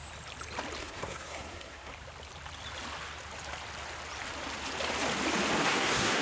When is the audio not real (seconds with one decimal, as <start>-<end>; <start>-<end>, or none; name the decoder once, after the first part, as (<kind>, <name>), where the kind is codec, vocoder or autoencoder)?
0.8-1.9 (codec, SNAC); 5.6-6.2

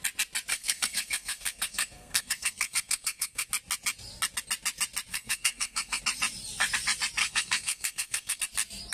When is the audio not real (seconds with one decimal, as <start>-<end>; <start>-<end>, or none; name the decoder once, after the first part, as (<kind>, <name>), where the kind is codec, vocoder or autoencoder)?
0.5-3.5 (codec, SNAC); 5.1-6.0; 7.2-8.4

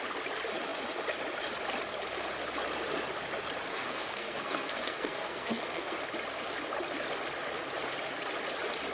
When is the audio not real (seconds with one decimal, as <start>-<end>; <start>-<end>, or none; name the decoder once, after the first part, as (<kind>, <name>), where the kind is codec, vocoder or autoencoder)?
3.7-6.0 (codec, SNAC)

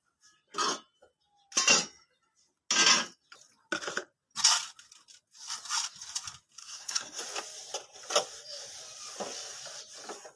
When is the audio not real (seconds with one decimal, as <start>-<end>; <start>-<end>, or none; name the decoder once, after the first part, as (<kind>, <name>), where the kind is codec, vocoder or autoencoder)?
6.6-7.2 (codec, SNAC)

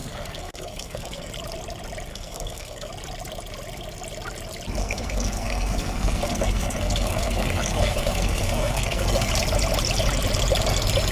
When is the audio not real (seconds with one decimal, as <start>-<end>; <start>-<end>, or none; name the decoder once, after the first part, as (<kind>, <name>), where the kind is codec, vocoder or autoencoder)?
0.0-1.3 (codec, SNAC); 2.1-2.9; 4.8-9.3